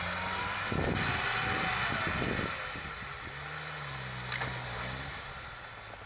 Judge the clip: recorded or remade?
recorded